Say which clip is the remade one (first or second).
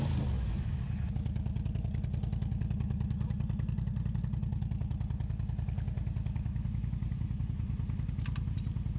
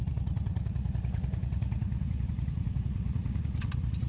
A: second